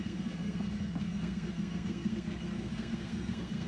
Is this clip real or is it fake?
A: fake